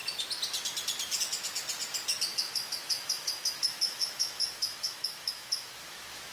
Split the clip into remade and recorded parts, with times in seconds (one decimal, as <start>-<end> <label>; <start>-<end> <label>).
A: 0.0-2.3 recorded; 2.3-6.3 remade